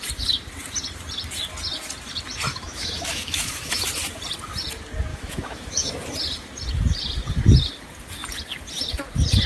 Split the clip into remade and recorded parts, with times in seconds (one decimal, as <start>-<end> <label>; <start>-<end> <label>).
0.0-2.5 recorded; 2.5-3.8 remade; 3.8-5.1 recorded; 5.1-5.9 remade; 5.9-9.5 recorded